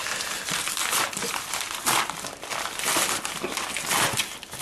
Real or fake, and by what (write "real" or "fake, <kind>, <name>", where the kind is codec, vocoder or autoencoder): real